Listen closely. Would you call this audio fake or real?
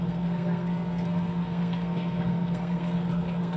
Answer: fake